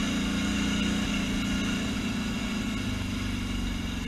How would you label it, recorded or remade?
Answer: recorded